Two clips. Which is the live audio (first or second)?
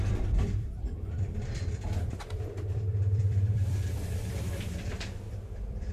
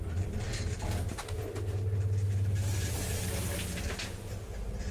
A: second